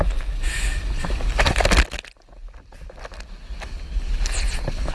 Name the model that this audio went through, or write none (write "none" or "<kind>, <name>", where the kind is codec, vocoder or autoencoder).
none